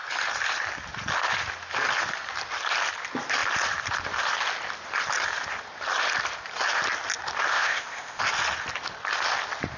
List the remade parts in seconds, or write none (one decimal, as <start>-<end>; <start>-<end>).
7.5-8.2